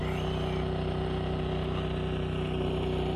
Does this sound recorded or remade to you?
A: recorded